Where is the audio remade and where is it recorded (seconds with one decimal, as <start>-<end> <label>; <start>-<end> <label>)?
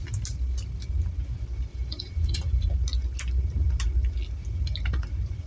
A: 0.0-1.7 recorded; 1.7-2.7 remade; 2.7-5.5 recorded